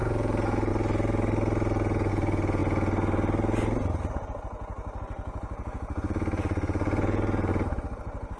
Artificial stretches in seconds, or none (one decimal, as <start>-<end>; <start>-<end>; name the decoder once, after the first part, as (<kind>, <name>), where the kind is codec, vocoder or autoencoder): 0.0-0.7 (vocoder, Vocos); 2.1-2.6; 5.0-7.5